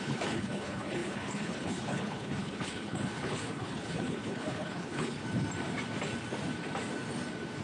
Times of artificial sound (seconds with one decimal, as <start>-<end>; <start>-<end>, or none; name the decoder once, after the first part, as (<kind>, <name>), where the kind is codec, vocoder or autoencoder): 0.0-5.2 (codec, HILCodec)

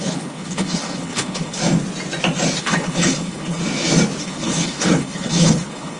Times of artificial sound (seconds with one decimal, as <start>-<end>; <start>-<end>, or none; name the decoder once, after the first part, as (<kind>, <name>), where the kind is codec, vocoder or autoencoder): 0.0-1.6 (codec, HILCodec); 2.6-3.6; 4.2-6.0

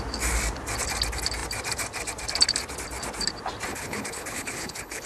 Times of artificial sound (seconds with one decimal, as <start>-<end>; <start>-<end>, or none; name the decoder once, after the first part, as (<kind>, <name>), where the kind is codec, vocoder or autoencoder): 3.7-5.1 (codec, HILCodec)

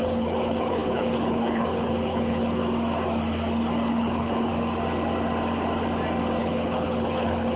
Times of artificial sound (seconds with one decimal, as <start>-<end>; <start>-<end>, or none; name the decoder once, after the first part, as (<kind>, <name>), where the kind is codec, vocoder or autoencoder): 0.0-2.6 (codec, HILCodec); 3.9-4.5; 6.4-7.6

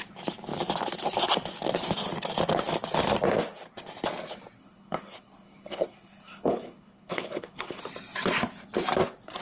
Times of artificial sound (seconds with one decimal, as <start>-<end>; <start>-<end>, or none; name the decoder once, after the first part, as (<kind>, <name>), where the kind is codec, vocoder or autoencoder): 4.6-7.8 (codec, HILCodec)